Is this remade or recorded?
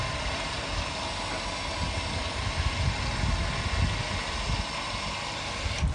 recorded